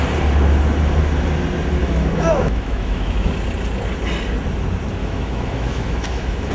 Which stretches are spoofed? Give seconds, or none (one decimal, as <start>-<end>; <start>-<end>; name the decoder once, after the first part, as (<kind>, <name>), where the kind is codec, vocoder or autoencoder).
1.8-3.3 (autoencoder, DAC-VAE); 5.0-6.5